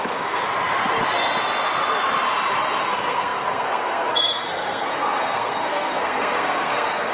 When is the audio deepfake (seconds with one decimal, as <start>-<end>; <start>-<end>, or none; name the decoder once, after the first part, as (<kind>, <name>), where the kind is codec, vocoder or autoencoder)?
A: 0.0-0.4 (codec, SNAC); 2.8-7.1